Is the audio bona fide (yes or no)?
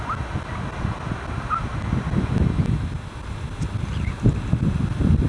yes